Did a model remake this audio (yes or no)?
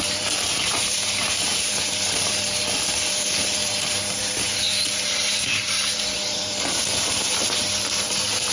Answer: yes